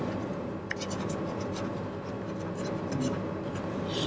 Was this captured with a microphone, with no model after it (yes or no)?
yes